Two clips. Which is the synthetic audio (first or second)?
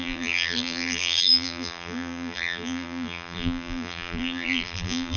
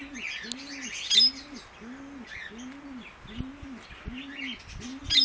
first